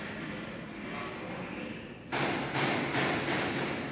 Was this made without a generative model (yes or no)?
yes